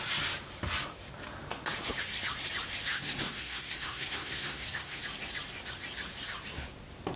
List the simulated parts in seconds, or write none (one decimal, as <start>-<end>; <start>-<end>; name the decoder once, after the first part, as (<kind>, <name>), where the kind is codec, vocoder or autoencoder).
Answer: 2.9-5.0 (codec, SNAC)